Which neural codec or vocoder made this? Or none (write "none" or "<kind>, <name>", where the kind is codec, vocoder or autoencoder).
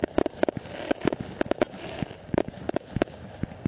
codec, DAC